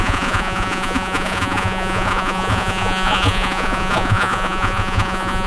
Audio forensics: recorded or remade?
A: remade